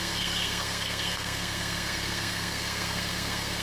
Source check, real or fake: fake